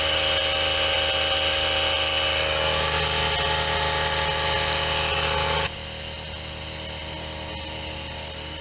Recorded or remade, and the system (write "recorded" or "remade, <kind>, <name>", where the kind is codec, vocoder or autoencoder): recorded